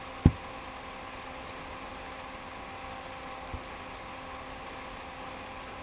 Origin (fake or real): real